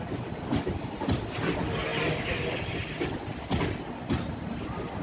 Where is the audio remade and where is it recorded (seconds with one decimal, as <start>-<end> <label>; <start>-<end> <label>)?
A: 0.0-5.0 recorded